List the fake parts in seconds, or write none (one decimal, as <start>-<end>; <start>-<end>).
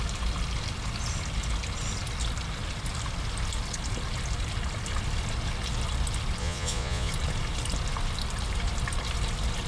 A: 6.4-7.1